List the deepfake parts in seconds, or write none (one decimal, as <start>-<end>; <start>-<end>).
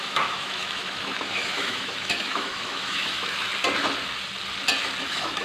0.0-3.5; 5.0-5.4